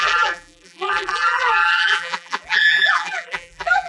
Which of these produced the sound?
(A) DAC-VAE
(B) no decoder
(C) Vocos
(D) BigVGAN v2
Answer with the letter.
D